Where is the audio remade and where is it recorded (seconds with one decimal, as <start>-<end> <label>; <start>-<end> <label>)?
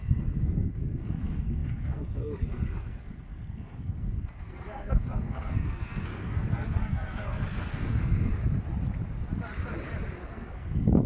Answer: 0.0-8.3 remade; 8.3-10.3 recorded; 10.3-11.1 remade